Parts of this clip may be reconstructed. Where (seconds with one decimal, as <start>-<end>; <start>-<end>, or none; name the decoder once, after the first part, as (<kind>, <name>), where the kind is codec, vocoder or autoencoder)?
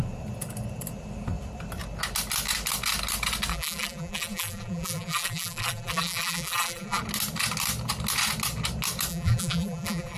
3.5-7.0 (vocoder, BigVGAN v2); 9.1-10.2